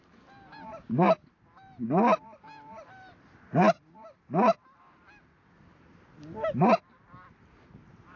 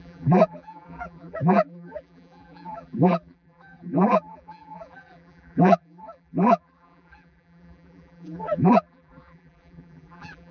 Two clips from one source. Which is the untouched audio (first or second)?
first